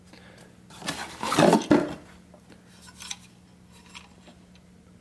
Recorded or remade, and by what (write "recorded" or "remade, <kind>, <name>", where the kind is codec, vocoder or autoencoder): recorded